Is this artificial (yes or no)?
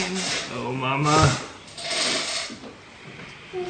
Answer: no